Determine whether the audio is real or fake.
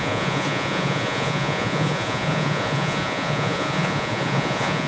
fake